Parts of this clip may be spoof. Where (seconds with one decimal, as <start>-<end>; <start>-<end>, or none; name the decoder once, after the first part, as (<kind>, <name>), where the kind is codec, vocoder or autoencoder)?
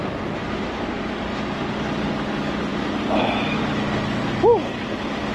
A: none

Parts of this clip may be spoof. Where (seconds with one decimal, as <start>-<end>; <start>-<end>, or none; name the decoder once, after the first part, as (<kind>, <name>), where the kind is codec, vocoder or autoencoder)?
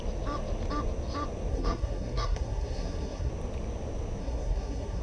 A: 1.5-3.3 (codec, SNAC); 4.2-5.0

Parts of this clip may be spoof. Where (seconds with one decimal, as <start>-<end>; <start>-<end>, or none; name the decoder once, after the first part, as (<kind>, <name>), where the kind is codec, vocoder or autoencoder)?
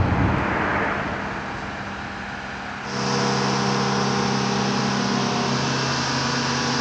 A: none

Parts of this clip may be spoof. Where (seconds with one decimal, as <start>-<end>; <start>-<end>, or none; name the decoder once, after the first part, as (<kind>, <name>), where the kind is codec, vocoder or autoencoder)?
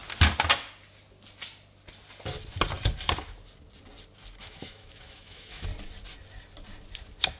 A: 4.4-5.7 (autoencoder, DAC-VAE)